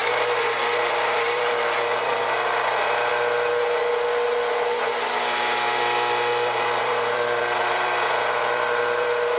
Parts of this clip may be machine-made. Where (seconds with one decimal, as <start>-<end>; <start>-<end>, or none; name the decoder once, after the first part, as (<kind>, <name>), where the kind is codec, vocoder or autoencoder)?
0.6-3.1 (vocoder, BigVGAN v2); 6.8-9.4

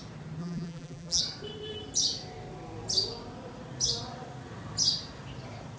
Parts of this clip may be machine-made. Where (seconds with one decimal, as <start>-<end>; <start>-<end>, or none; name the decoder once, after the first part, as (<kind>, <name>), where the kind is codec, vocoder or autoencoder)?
0.4-1.2 (vocoder, BigVGAN v2)